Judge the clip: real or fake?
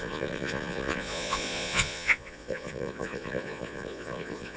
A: fake